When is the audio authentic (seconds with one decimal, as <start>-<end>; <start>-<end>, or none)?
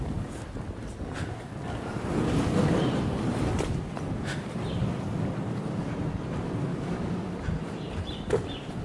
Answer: 0.0-6.7; 7.3-8.8